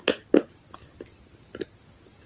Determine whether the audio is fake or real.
real